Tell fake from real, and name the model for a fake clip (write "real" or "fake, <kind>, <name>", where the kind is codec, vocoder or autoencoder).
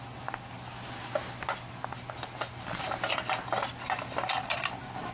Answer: real